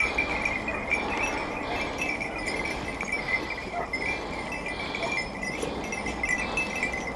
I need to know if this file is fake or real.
real